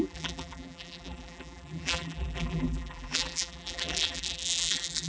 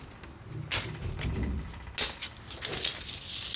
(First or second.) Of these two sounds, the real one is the second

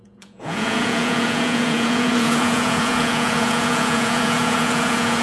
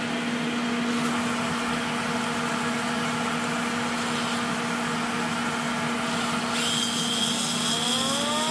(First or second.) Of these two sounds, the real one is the second